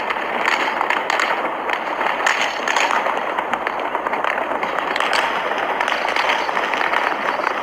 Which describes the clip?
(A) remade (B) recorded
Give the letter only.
B